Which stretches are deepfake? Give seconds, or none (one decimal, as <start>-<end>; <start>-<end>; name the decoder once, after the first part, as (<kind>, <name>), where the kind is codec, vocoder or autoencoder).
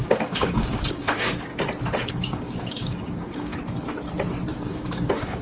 0.0-1.5 (codec, DAC); 2.1-3.5; 4.5-5.4